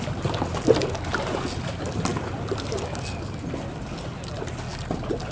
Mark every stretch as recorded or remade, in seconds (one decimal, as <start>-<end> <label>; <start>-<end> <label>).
0.0-5.3 recorded